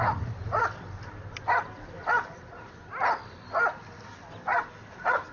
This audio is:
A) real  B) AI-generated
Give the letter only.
A